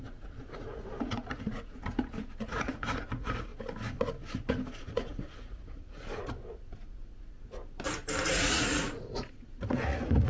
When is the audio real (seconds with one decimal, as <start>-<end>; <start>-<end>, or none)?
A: 3.5-4.8; 7.6-8.3